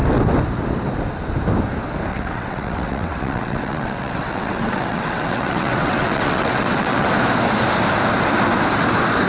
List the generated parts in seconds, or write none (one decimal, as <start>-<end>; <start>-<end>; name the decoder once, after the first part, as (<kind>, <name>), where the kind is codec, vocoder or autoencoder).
2.1-7.1 (vocoder, WaveNeXt)